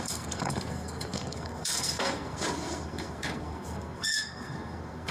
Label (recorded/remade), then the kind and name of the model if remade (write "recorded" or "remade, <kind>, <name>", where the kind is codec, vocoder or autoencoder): remade, codec, SNAC